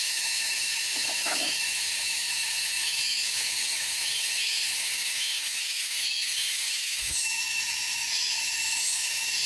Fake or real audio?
fake